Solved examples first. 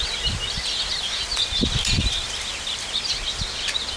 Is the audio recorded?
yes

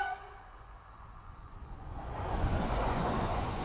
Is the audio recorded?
no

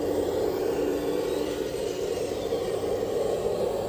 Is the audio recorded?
no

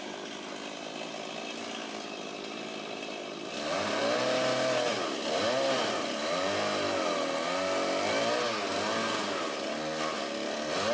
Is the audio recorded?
yes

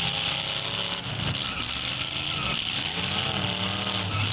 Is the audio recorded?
yes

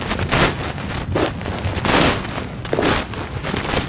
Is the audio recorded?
yes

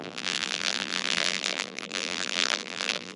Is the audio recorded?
no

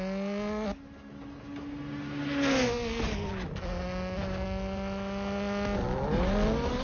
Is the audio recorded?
yes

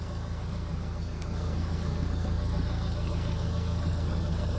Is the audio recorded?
no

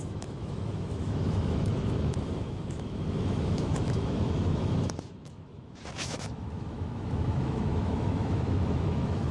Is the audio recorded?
no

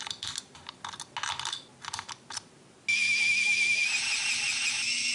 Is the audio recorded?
yes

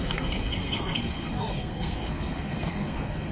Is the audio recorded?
no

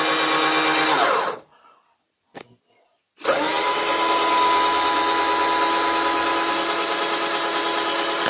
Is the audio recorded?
yes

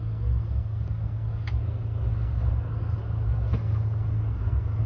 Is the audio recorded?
no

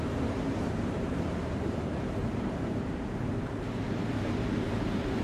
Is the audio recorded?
no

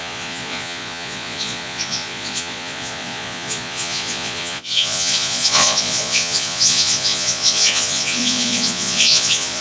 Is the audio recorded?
no